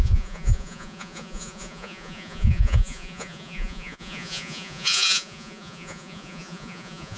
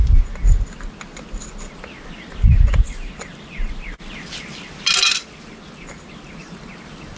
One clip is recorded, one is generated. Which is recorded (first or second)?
second